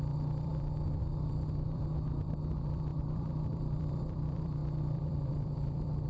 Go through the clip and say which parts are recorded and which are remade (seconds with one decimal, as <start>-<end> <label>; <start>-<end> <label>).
0.0-6.1 remade